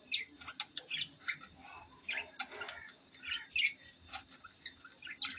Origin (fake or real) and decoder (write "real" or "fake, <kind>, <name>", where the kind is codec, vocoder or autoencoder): real